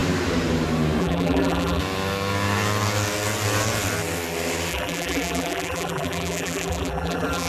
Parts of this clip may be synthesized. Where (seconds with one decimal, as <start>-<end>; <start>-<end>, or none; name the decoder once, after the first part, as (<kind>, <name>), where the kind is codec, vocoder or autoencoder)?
1.0-1.8 (vocoder, BigVGAN v2); 4.7-7.5